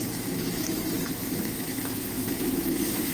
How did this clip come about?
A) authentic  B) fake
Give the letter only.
B